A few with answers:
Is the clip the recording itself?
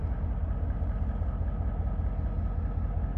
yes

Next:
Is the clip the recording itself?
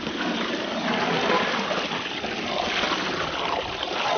yes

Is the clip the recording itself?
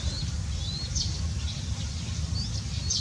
yes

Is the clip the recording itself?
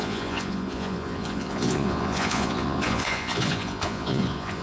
no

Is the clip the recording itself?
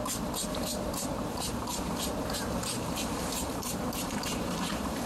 no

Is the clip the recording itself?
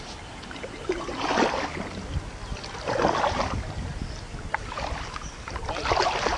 yes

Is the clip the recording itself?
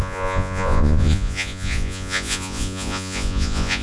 no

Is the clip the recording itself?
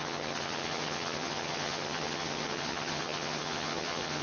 no